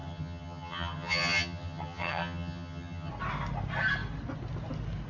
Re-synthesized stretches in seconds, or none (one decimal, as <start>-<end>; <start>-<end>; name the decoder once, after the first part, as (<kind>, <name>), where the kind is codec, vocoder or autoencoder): 0.0-3.1 (vocoder, HiFi-GAN)